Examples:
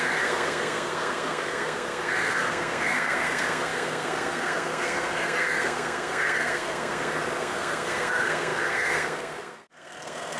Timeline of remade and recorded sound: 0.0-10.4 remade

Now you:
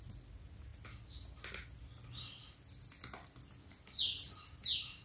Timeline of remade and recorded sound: 0.0-5.0 recorded

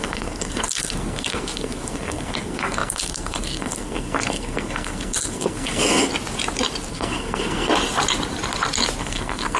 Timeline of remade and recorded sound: 0.0-6.1 remade; 6.1-6.9 recorded; 6.9-7.7 remade; 7.7-9.0 recorded; 9.0-9.6 remade

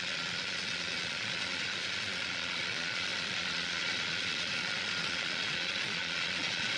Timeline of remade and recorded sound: 0.0-6.8 remade

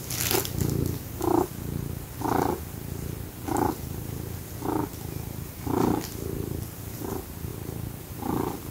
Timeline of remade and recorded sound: 0.0-8.7 recorded

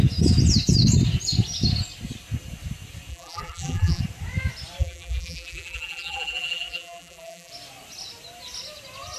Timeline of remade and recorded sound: 0.0-3.1 recorded; 3.1-4.0 remade; 4.0-4.8 recorded; 4.8-7.5 remade; 7.5-9.2 recorded

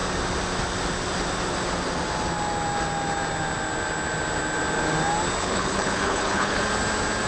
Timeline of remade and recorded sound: 0.0-5.4 recorded; 5.4-6.6 remade; 6.6-7.3 recorded

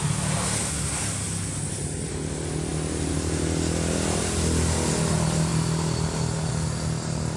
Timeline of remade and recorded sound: 0.0-7.4 recorded